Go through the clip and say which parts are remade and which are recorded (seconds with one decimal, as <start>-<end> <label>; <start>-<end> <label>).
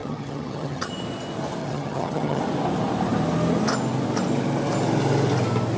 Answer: 0.0-0.9 remade; 0.9-1.6 recorded; 1.6-2.4 remade; 2.4-5.8 recorded